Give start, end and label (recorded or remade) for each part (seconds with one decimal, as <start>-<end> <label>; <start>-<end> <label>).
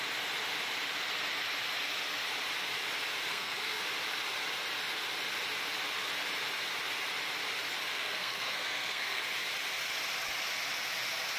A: 0.0-3.3 recorded; 3.3-3.8 remade; 3.8-7.9 recorded; 7.9-9.2 remade; 9.2-11.4 recorded